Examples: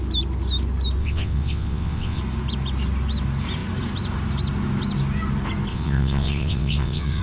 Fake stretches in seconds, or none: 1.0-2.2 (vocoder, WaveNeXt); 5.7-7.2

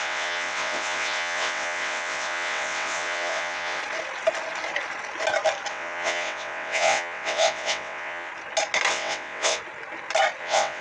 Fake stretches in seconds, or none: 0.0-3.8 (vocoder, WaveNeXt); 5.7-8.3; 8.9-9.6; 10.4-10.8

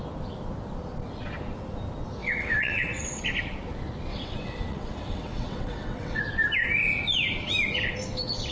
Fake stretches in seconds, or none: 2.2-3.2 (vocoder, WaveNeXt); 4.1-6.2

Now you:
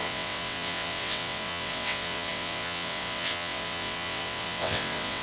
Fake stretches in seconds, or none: 0.0-5.2 (vocoder, WaveNeXt)

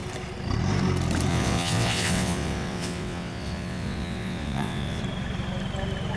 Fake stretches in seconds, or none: 1.3-5.0 (vocoder, WaveNeXt)

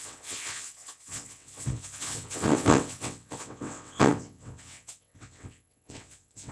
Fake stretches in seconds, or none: 0.0-6.5 (vocoder, WaveNeXt)

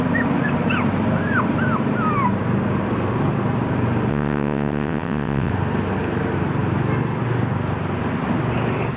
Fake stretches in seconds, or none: 4.1-5.5 (vocoder, WaveNeXt)